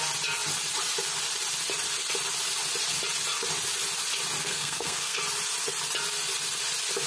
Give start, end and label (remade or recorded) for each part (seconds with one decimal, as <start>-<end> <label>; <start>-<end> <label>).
0.0-4.4 recorded; 4.4-5.2 remade; 5.2-7.1 recorded